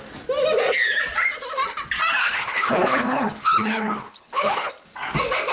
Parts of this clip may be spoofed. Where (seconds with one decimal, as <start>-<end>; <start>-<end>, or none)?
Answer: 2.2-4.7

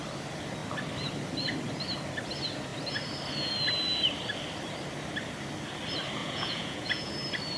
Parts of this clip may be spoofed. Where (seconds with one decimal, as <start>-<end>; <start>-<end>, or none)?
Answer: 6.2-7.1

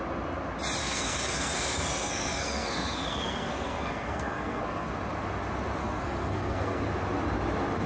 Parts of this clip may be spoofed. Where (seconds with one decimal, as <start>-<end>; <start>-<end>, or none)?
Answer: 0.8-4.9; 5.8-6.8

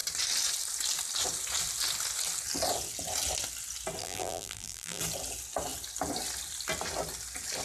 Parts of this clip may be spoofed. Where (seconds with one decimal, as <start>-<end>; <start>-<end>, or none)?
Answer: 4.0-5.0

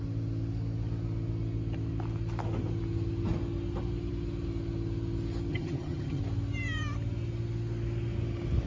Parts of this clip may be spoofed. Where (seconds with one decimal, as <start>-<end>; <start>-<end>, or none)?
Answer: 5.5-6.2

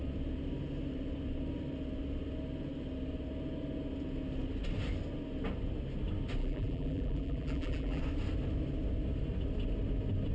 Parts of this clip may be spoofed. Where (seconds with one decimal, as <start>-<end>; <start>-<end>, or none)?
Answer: 6.4-8.0